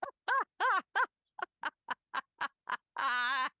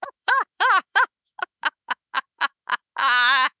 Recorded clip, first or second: first